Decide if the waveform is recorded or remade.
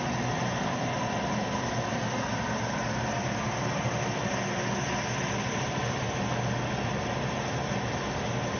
recorded